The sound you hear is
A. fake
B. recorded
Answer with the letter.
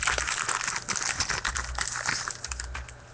B